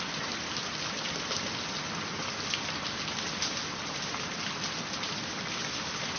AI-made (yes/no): no